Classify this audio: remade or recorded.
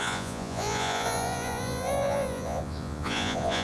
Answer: remade